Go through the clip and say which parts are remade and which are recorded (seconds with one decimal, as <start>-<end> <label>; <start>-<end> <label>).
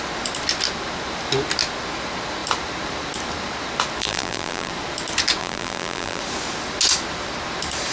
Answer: 0.0-4.0 recorded; 4.0-4.7 remade; 4.7-5.4 recorded; 5.4-6.2 remade; 6.2-7.9 recorded